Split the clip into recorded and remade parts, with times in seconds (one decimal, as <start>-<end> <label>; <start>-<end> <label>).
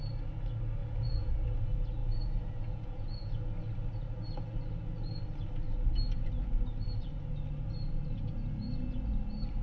0.0-0.8 recorded; 0.8-1.3 remade; 1.3-2.0 recorded; 2.0-3.3 remade; 3.3-9.6 recorded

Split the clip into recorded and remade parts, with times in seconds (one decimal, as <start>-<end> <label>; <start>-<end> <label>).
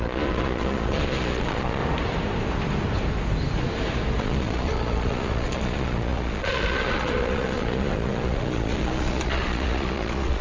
0.0-1.8 remade; 1.8-4.2 recorded; 4.2-10.4 remade